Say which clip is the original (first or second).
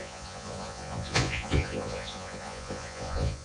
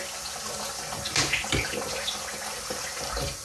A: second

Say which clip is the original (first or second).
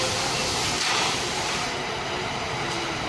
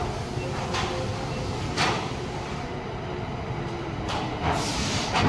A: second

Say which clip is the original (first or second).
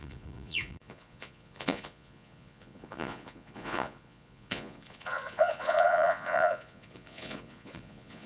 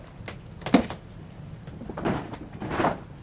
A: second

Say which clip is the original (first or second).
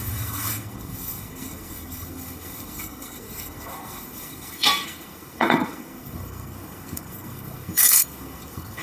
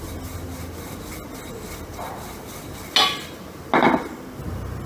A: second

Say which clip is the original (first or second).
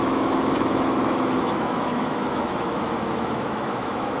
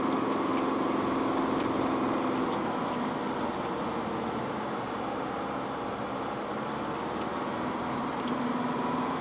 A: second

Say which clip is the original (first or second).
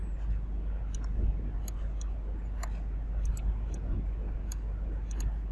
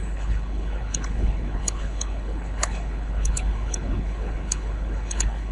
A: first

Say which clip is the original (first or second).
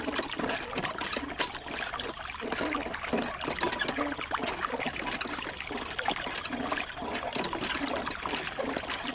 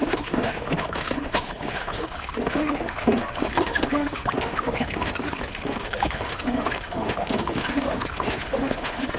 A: first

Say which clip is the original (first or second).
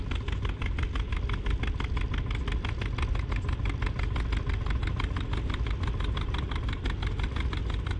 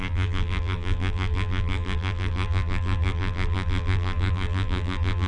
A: first